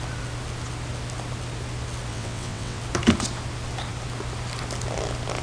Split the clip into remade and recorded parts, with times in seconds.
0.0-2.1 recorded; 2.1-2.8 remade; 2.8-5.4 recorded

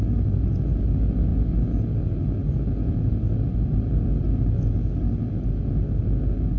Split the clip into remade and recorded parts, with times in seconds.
0.0-6.6 recorded

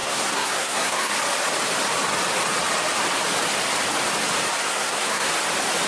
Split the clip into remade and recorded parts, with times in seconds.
0.0-1.1 remade; 1.1-4.7 recorded; 4.7-5.3 remade; 5.3-5.9 recorded